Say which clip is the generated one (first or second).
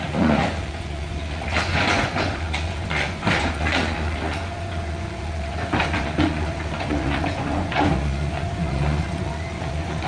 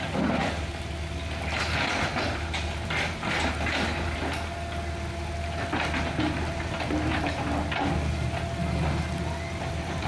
first